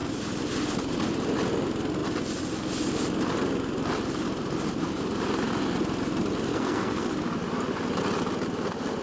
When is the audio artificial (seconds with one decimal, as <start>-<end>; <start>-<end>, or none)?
6.5-7.1